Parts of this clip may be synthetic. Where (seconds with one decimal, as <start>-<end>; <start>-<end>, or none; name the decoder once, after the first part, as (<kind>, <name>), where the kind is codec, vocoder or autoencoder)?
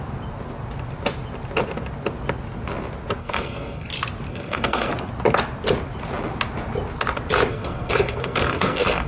3.2-3.9 (codec, SNAC); 4.3-4.9; 7.5-9.1